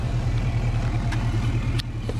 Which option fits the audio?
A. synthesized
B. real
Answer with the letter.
A